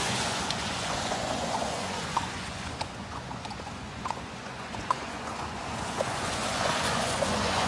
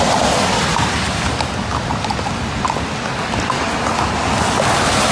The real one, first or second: second